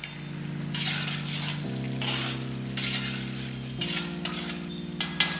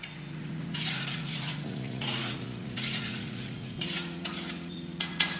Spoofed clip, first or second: second